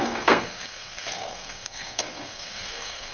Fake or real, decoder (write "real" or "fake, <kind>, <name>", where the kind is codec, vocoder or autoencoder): fake, codec, SNAC